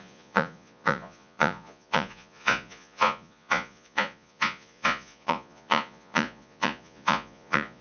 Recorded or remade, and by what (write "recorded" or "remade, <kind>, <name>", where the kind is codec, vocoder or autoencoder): remade, vocoder, Vocos